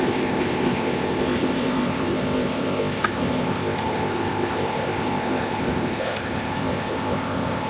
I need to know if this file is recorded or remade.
remade